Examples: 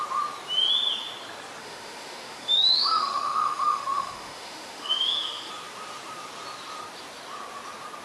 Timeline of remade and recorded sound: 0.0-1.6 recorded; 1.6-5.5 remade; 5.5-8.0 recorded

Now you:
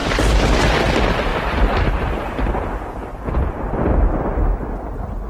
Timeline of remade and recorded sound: 0.0-0.6 remade; 0.6-1.3 recorded; 1.3-3.7 remade; 3.7-5.3 recorded